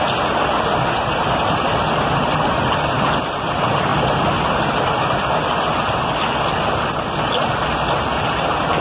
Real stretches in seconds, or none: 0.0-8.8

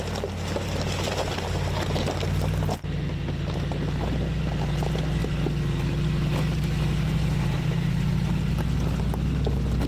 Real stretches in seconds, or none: 0.0-9.9

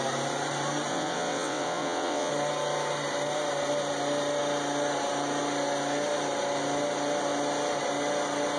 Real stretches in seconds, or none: 0.0-0.9; 2.3-8.6

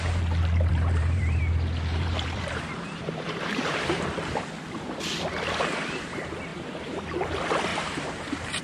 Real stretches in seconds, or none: 0.0-0.7; 1.4-1.9; 4.0-6.5; 7.0-7.7

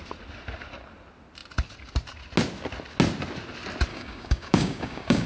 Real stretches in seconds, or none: 0.0-3.9

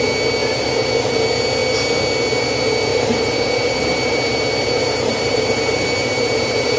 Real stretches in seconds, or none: 0.0-0.4; 0.9-2.9